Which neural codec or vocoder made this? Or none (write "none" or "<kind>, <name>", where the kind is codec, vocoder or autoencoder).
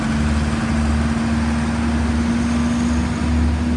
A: none